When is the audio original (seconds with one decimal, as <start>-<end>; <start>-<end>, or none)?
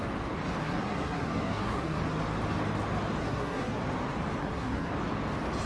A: 0.0-0.6; 2.0-3.2; 3.8-4.4; 4.9-5.7